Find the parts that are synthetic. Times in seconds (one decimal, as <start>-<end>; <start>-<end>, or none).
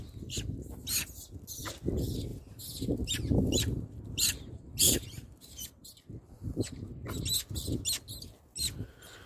2.3-5.9